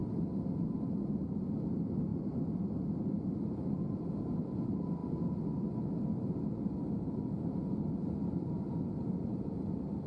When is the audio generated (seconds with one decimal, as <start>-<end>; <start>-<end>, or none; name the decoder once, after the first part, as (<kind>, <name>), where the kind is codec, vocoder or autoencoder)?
1.5-5.0 (vocoder, BigVGAN v2); 7.9-10.1